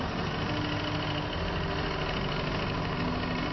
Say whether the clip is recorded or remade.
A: recorded